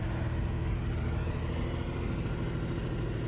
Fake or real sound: real